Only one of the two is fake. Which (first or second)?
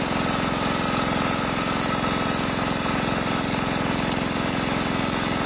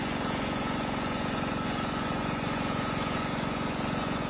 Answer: second